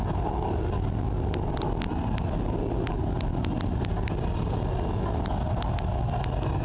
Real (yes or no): yes